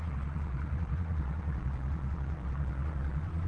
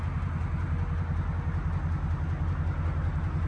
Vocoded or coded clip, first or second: first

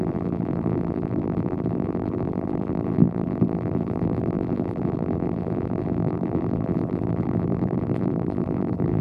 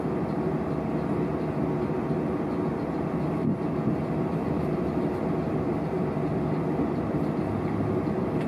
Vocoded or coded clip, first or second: first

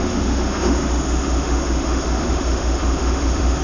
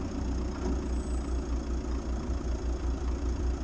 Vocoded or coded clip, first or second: first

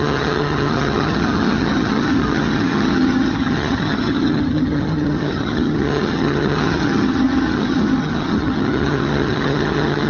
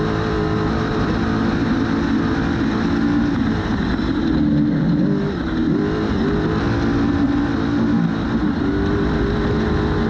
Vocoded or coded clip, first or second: first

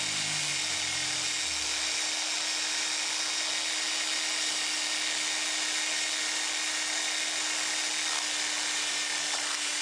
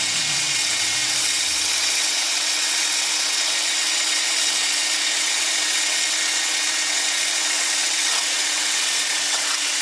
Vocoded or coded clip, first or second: second